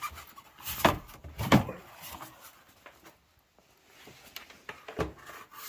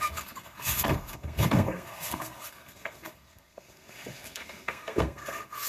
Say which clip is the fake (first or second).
second